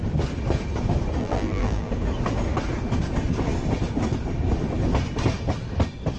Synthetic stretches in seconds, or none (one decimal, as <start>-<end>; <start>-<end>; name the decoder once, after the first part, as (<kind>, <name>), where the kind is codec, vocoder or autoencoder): 1.2-1.9 (vocoder, BigVGAN v2)